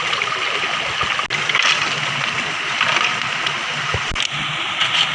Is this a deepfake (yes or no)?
no